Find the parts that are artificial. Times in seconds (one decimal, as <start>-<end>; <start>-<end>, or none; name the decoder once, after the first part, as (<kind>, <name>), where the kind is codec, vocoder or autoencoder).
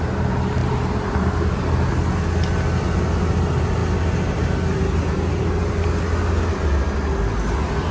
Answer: 0.6-1.3 (vocoder, BigVGAN v2)